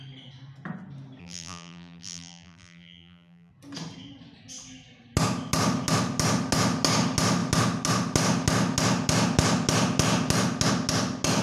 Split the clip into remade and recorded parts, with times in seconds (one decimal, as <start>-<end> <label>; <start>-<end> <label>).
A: 0.0-1.2 recorded; 1.2-3.5 remade; 3.5-11.4 recorded